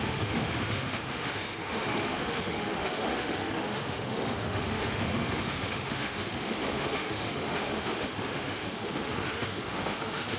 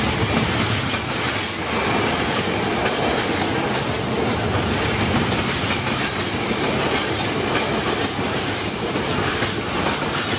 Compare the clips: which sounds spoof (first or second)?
first